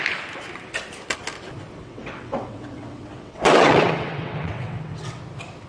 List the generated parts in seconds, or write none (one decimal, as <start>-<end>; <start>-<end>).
1.8-5.2